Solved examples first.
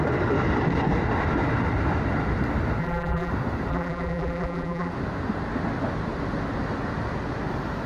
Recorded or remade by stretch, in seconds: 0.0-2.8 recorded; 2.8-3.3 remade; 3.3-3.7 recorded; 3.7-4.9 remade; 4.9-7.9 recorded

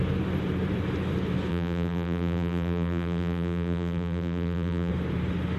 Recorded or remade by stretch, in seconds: 0.0-1.5 recorded; 1.5-4.9 remade; 4.9-5.6 recorded

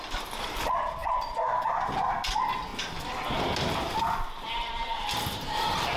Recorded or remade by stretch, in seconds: 0.0-2.7 remade; 2.7-4.3 recorded; 4.3-6.0 remade

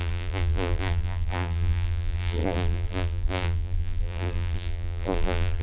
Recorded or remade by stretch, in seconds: 0.0-5.6 remade

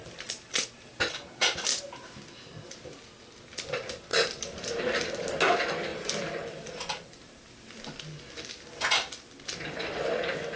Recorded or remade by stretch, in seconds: 0.0-0.9 remade; 0.9-4.1 recorded; 4.1-4.6 remade; 4.6-5.9 recorded; 5.9-7.4 remade; 7.4-10.6 recorded